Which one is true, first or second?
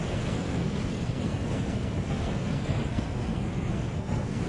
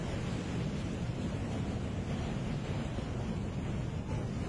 second